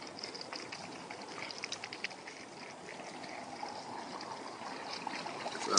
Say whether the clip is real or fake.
real